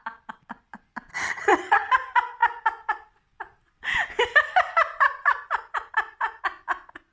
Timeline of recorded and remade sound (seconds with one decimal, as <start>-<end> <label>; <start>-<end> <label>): 0.0-1.1 recorded; 1.1-1.9 remade; 1.9-7.1 recorded